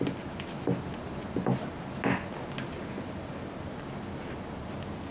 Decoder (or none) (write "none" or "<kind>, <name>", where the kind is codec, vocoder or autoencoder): none